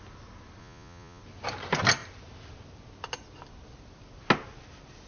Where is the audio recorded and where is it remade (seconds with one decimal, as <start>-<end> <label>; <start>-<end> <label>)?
0.0-0.6 recorded; 0.6-1.2 remade; 1.2-5.1 recorded